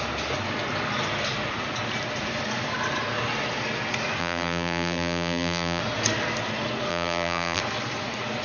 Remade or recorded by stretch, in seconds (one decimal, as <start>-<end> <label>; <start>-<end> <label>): 0.0-4.2 recorded; 4.2-5.8 remade; 5.8-6.9 recorded; 6.9-7.6 remade; 7.6-8.4 recorded